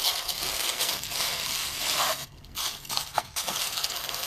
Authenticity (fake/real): fake